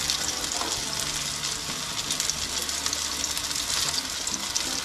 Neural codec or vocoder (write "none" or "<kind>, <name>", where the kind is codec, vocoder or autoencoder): none